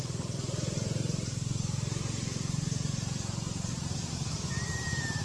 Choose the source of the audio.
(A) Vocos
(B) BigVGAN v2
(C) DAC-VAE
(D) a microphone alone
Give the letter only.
B